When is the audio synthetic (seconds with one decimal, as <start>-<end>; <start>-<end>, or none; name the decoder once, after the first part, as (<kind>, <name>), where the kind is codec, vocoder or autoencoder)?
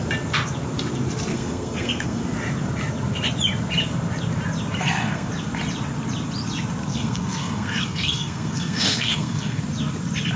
1.3-2.2 (codec, SNAC); 4.8-5.3; 6.9-9.6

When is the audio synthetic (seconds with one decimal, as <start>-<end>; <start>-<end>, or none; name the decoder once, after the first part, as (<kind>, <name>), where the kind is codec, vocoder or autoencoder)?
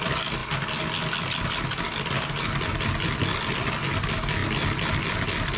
none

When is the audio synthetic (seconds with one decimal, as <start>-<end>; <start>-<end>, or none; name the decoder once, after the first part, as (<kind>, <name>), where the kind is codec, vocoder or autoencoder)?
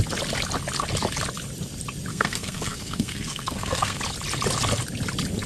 2.1-4.0 (codec, SNAC)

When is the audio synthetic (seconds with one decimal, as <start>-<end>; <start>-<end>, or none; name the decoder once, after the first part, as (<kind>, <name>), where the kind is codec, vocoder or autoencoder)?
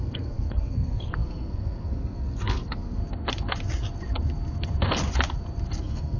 0.0-3.0 (codec, SNAC); 5.8-6.2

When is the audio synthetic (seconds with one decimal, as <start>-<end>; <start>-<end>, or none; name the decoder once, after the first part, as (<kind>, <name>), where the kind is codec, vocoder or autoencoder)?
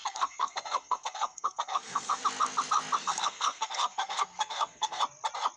0.0-2.2 (codec, SNAC); 3.0-5.0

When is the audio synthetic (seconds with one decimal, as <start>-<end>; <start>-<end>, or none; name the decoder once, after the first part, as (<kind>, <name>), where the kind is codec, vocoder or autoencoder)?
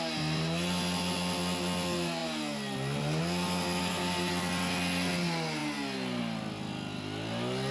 3.8-4.3 (codec, SNAC)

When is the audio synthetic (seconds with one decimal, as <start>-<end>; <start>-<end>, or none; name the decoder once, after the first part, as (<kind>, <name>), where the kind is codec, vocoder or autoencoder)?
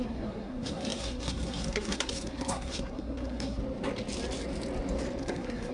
0.0-3.6 (codec, SNAC); 5.2-5.7